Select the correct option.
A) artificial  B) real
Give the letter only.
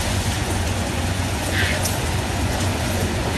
A